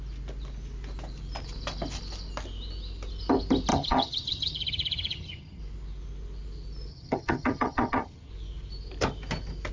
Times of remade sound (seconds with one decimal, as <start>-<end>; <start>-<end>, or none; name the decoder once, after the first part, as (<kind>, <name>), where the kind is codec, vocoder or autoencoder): 3.7-5.6 (vocoder, HiFi-GAN); 6.9-8.3